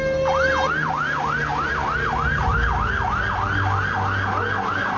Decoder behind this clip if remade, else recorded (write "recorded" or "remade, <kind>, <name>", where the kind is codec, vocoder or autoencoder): recorded